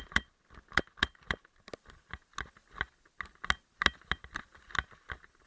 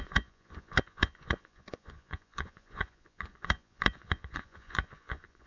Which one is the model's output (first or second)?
second